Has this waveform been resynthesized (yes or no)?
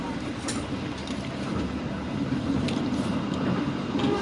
yes